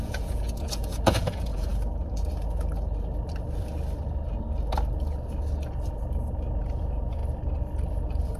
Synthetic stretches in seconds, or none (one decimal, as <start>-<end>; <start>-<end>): 0.0-1.7; 6.6-7.2